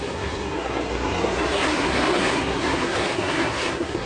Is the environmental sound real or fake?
fake